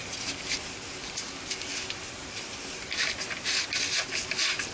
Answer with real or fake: real